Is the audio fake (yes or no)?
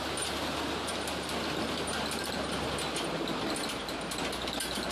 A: no